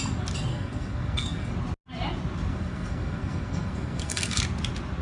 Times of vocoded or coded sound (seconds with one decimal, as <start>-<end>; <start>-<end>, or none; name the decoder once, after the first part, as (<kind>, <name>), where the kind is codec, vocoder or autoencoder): 0.5-1.5 (codec, SNAC); 2.5-4.4